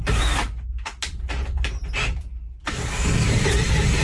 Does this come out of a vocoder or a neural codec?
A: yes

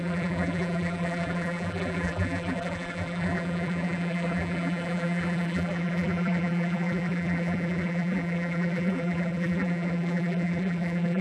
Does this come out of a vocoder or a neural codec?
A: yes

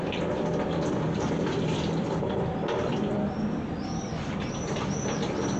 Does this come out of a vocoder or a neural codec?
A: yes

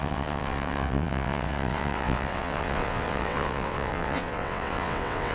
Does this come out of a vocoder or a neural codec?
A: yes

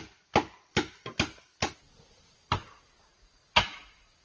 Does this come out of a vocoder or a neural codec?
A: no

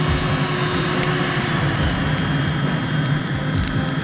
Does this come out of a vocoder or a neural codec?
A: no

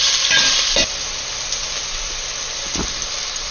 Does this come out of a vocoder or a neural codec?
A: no